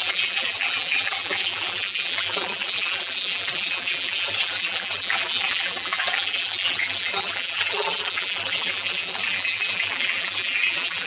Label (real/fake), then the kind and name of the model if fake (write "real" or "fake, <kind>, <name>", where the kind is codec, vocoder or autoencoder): fake, vocoder, BigVGAN v2